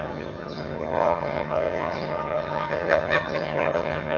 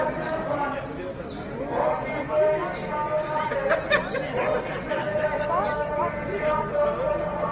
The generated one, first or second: first